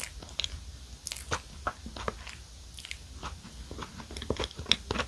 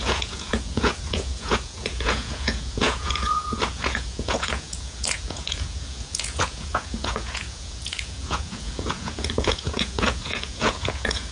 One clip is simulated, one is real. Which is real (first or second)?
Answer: first